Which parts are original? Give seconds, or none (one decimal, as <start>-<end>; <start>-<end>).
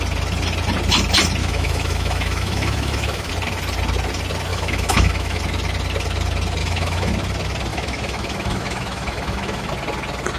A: 0.0-1.4; 3.3-4.5; 5.4-6.6; 7.1-7.7; 9.7-10.4